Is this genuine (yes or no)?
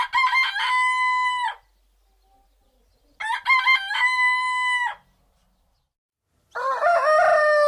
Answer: yes